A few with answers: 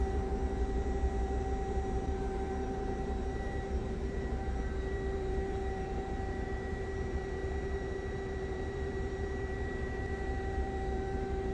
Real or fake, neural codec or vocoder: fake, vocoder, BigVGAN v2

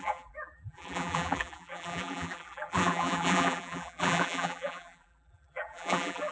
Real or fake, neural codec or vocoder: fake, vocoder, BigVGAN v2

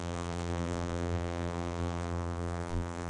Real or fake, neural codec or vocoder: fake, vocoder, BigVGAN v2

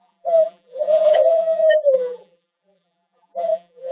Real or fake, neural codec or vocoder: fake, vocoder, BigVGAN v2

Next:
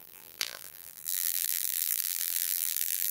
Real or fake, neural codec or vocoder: fake, vocoder, BigVGAN v2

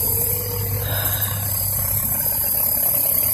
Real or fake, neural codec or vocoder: fake, vocoder, BigVGAN v2